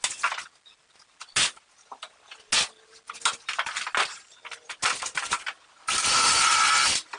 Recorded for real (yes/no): yes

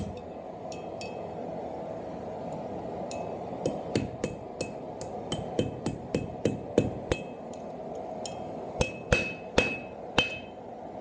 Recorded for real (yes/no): yes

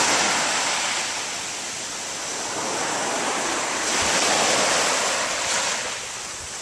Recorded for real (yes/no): yes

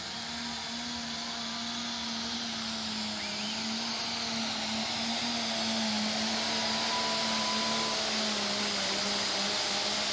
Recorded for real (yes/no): yes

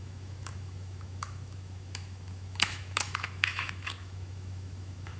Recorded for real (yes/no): no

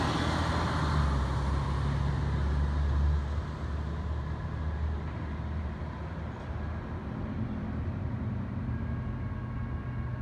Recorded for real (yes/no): yes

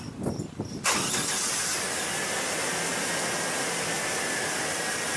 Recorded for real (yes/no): yes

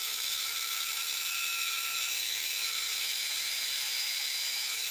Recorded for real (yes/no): no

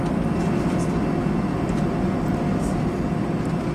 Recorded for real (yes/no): yes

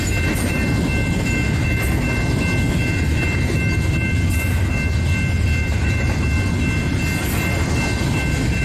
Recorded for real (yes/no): yes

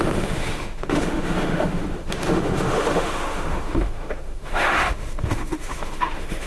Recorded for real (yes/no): no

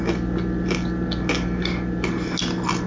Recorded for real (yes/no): yes